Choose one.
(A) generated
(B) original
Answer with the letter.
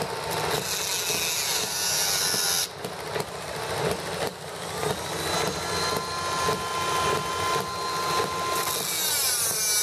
B